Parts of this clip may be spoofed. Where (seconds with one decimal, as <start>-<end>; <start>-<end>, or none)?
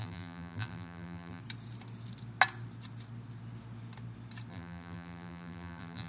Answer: 0.0-1.4; 4.5-6.1